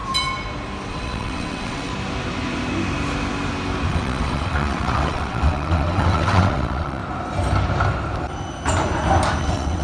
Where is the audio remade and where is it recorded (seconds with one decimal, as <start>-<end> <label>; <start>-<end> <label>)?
0.0-0.9 recorded; 0.9-1.9 remade; 1.9-3.9 recorded; 3.9-7.0 remade; 7.0-9.4 recorded; 9.4-9.8 remade